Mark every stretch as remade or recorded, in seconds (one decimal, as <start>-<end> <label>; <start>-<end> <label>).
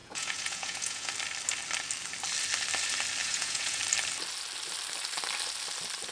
0.0-1.1 remade; 1.1-3.2 recorded; 3.2-3.8 remade; 3.8-6.1 recorded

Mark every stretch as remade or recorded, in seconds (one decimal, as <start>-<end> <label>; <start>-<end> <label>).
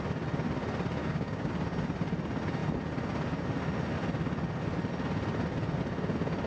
0.0-1.0 recorded; 1.0-1.5 remade; 1.5-6.5 recorded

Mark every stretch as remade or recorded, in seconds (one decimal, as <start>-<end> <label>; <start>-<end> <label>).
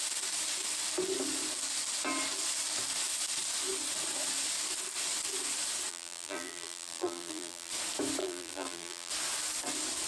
0.0-5.9 recorded; 5.9-7.7 remade; 7.7-8.2 recorded; 8.2-9.1 remade; 9.1-10.1 recorded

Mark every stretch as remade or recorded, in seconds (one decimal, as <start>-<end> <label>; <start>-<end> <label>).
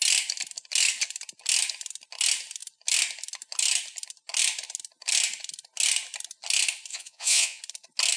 0.0-6.9 recorded; 6.9-7.6 remade; 7.6-8.2 recorded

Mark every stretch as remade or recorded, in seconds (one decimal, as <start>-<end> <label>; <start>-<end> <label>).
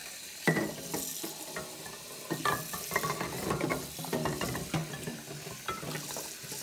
0.0-6.6 recorded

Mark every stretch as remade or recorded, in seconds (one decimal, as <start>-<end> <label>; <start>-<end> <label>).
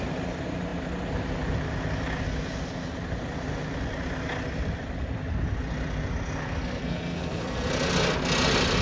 0.0-6.8 recorded; 6.8-7.7 remade; 7.7-8.8 recorded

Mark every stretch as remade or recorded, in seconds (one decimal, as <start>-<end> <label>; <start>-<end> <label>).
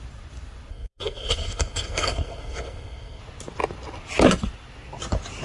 0.0-0.7 recorded; 0.7-3.2 remade; 3.2-5.4 recorded